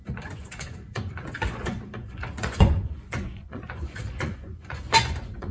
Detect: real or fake fake